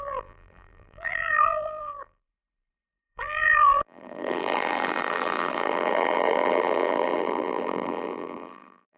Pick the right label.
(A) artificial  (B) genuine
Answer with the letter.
A